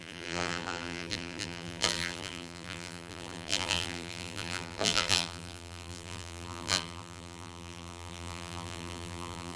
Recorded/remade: remade